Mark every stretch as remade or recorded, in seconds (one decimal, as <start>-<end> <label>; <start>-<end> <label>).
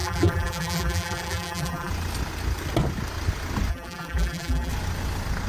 0.0-1.9 remade; 1.9-3.7 recorded; 3.7-4.7 remade; 4.7-5.5 recorded